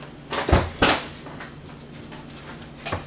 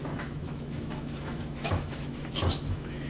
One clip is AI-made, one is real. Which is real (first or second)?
first